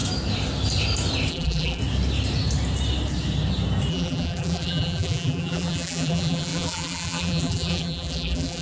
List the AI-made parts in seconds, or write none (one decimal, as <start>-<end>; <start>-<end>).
1.3-1.8; 3.9-8.6